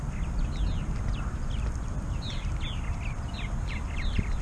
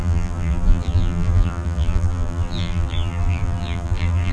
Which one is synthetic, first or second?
second